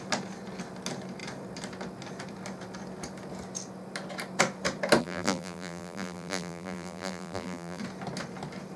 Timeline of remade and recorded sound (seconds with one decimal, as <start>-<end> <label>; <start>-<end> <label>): 0.0-5.0 recorded; 5.0-7.8 remade; 7.8-8.8 recorded